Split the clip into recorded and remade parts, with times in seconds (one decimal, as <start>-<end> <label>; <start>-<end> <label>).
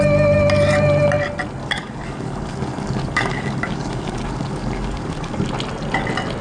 0.0-1.6 recorded; 1.6-5.4 remade; 5.4-6.4 recorded